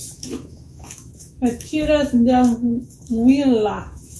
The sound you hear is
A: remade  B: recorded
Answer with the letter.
A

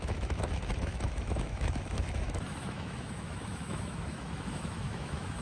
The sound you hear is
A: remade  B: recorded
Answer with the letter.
A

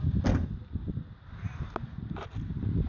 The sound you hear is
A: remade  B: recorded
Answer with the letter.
B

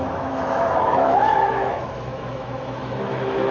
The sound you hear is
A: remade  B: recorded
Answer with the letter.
A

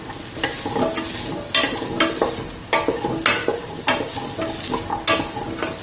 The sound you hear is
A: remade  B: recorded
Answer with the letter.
B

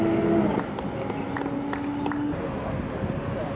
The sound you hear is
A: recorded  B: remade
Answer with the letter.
A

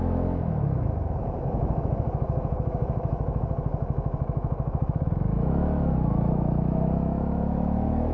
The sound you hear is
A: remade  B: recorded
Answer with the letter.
A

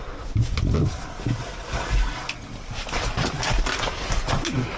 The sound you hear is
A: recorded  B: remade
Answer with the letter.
A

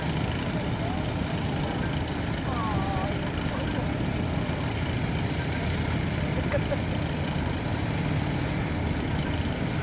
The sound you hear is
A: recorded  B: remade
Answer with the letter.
A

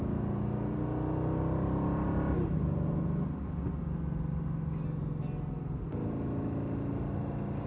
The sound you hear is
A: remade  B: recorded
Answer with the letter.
B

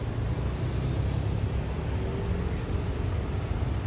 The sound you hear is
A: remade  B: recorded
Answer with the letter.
B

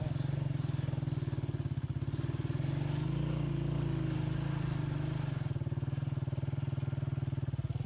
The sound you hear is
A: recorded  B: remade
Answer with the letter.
A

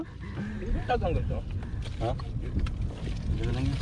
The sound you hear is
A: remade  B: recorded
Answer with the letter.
B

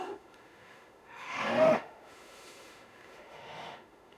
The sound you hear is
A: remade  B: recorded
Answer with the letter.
A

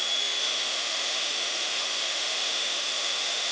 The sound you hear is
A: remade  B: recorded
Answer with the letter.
A